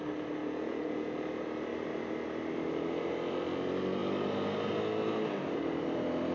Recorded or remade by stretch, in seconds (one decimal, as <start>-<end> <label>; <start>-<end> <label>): 0.0-0.4 recorded; 0.4-1.2 remade; 1.2-6.3 recorded